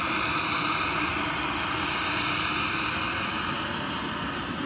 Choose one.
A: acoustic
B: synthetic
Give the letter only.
A